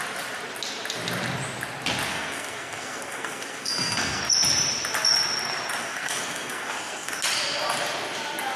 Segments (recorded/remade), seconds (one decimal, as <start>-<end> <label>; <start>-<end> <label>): 0.0-2.1 recorded; 2.1-4.2 remade; 4.2-5.8 recorded; 5.8-7.2 remade; 7.2-8.6 recorded

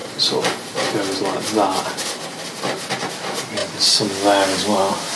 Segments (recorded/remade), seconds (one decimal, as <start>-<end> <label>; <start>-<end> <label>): 0.0-5.2 recorded

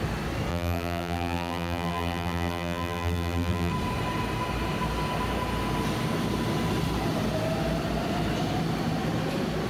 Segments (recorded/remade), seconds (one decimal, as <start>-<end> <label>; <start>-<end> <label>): 0.0-0.5 recorded; 0.5-3.7 remade; 3.7-9.7 recorded

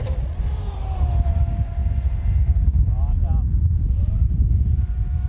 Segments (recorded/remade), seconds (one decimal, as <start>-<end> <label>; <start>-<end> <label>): 0.0-1.8 remade; 1.8-3.5 recorded; 3.5-5.3 remade

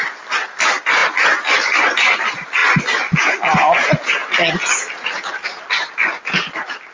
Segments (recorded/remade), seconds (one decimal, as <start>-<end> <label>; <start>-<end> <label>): 0.0-2.6 remade; 2.6-6.9 recorded

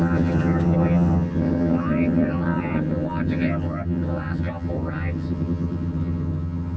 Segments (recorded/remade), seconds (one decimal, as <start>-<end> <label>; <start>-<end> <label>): 0.0-6.8 remade

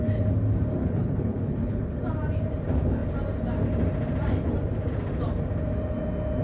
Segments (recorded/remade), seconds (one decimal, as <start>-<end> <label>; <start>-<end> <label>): 0.0-0.8 recorded; 0.8-2.0 remade; 2.0-6.4 recorded